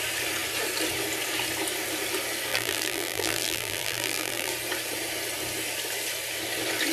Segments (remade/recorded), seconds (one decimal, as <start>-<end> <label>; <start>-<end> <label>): 0.0-2.5 recorded; 2.5-4.5 remade; 4.5-6.9 recorded